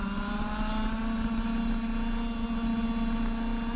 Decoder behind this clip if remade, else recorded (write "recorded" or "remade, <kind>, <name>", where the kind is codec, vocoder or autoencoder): recorded